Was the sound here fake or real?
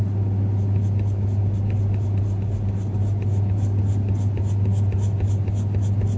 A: real